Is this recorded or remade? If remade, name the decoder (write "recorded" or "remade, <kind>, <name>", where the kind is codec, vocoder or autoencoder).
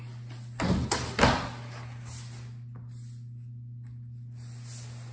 recorded